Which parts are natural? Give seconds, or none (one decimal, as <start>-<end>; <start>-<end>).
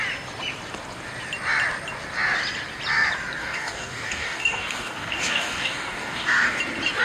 0.0-3.4; 6.6-7.0